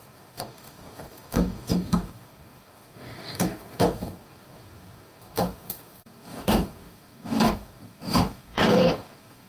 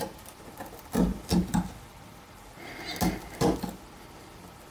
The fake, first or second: first